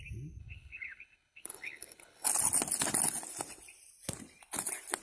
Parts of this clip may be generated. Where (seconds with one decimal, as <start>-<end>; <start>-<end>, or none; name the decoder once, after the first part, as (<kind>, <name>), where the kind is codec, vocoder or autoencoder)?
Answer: 0.4-2.3 (codec, HILCodec)